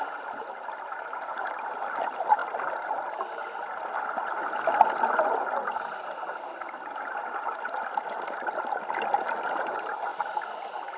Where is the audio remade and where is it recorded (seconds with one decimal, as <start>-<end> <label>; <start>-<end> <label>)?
0.0-11.0 recorded